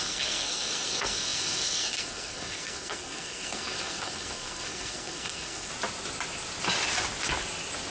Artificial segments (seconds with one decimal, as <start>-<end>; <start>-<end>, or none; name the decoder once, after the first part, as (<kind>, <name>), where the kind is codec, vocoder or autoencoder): 0.0-5.7 (codec, SNAC)